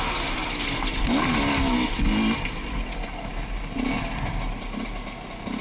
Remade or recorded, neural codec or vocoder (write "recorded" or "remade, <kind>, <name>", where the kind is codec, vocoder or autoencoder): recorded